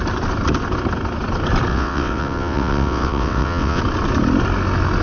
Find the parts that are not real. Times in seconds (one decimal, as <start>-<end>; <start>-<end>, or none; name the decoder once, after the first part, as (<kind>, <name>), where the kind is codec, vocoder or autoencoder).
1.7-3.8 (vocoder, WaveNeXt)